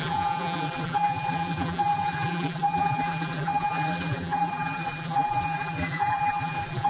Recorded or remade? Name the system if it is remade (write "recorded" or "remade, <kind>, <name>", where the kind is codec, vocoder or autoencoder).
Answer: remade, vocoder, BigVGAN v2